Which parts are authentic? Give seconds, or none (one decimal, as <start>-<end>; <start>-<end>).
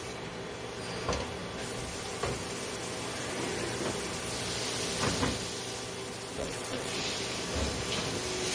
0.0-6.4; 7.1-8.5